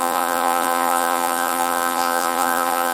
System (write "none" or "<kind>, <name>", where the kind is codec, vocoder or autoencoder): vocoder, BigVGAN v2